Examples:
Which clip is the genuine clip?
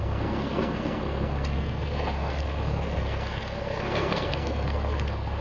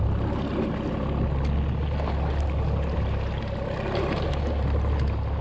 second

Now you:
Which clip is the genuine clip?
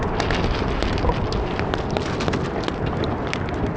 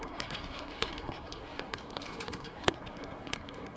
first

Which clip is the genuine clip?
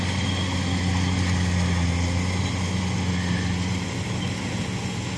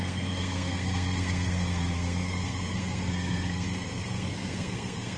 first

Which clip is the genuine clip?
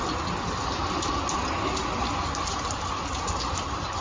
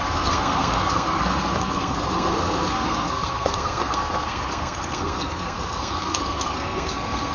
first